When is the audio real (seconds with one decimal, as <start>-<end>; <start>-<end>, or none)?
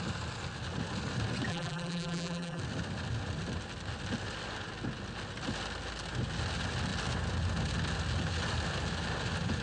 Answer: 0.0-1.5; 2.6-9.6